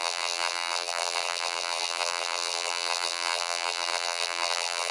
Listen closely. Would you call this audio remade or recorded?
remade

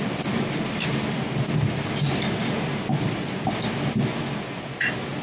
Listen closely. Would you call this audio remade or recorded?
recorded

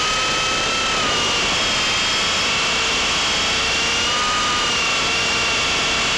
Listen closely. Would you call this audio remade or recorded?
recorded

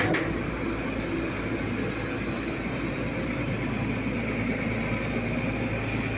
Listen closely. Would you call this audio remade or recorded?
recorded